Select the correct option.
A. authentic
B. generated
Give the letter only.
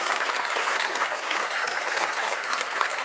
B